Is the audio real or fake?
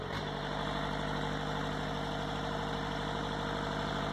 real